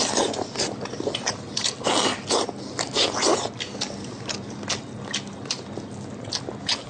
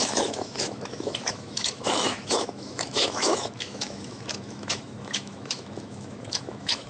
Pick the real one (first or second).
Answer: first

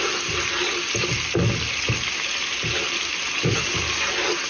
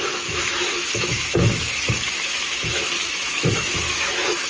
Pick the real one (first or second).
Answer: first